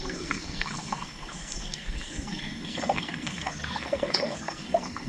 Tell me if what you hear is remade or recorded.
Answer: remade